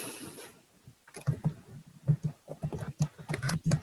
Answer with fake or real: real